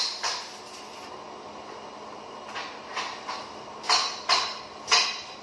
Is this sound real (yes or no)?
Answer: yes